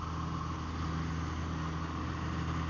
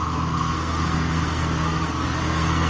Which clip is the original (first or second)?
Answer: first